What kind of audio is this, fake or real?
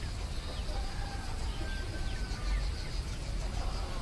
real